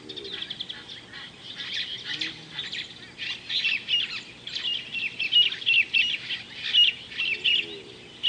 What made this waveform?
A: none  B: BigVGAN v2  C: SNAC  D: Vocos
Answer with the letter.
A